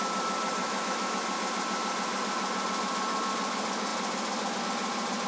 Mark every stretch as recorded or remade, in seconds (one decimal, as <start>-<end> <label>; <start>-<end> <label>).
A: 0.0-0.6 recorded; 0.6-1.1 remade; 1.1-5.3 recorded